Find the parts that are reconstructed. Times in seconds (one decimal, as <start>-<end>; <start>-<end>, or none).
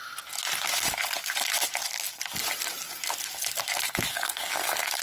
4.1-5.0